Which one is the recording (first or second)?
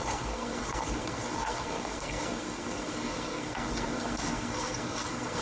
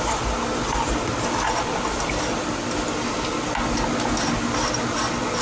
second